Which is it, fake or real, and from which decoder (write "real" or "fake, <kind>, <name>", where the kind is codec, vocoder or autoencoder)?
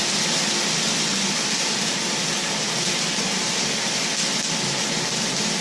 real